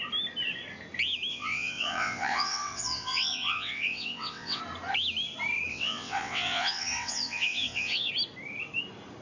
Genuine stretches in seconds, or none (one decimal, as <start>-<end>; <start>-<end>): 0.0-1.3; 4.6-5.7; 8.1-9.2